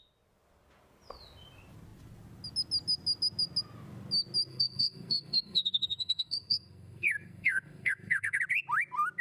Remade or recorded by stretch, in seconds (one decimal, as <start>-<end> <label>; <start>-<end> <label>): 0.0-4.5 recorded; 4.5-8.4 remade; 8.4-9.2 recorded